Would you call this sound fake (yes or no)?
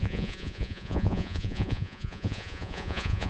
yes